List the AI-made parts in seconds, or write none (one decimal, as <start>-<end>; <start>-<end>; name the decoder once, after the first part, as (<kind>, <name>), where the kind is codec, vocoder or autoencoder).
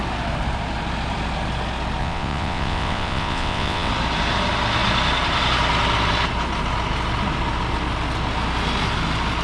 2.0-3.9 (vocoder, WaveNeXt)